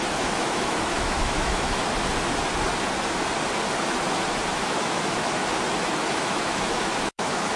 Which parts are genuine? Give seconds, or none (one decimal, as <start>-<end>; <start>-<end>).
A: 1.8-4.7; 5.4-6.1